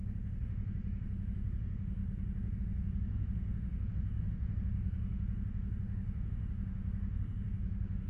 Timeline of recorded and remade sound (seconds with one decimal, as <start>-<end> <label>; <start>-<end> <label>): 0.0-8.1 remade